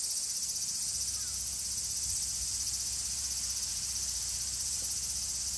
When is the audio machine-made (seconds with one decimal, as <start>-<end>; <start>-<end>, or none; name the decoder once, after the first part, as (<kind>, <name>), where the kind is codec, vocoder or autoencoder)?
3.7-4.8 (vocoder, BigVGAN v2)

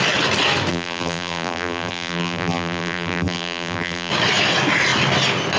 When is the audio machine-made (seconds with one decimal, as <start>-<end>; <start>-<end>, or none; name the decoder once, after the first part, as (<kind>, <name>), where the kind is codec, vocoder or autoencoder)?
0.7-4.1 (vocoder, BigVGAN v2)

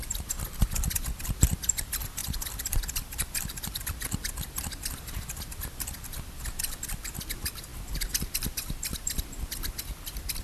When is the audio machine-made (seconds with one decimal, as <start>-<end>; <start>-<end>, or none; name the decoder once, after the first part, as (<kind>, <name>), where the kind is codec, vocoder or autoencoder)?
2.2-3.8 (vocoder, BigVGAN v2)

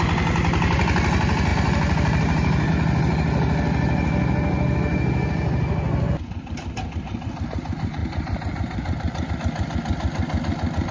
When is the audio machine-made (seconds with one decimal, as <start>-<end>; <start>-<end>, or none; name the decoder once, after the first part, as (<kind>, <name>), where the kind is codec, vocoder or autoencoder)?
1.5-2.7 (vocoder, BigVGAN v2); 8.0-9.3

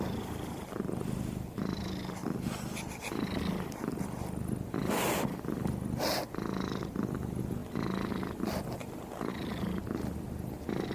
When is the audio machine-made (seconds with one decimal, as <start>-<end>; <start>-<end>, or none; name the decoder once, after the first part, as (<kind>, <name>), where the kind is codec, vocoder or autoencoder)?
none

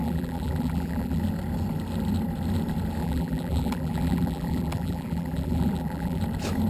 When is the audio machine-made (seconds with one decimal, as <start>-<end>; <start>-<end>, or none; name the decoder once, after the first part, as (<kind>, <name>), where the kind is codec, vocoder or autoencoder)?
0.0-1.2 (vocoder, BigVGAN v2); 3.0-6.2

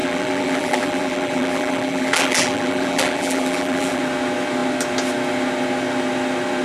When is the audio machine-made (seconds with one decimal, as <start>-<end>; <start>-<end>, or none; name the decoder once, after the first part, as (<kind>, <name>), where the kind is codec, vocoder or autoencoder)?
0.0-4.0 (vocoder, BigVGAN v2)